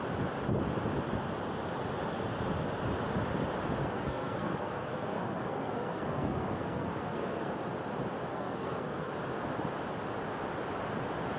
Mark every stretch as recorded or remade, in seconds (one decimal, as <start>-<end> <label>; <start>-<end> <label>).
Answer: 0.0-3.8 recorded; 3.8-7.5 remade; 7.5-8.3 recorded; 8.3-9.1 remade; 9.1-11.4 recorded